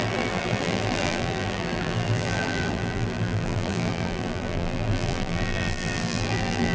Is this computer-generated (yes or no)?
yes